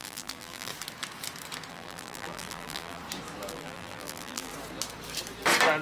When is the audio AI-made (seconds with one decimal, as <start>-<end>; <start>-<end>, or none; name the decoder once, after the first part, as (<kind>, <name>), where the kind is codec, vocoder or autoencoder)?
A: 0.0-0.7 (vocoder, BigVGAN v2); 1.7-3.0; 3.5-4.5